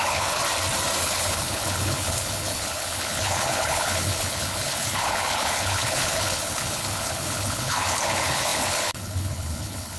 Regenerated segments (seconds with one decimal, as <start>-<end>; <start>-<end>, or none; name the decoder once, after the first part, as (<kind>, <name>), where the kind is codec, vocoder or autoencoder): 0.0-0.4 (codec, HILCodec); 1.0-10.0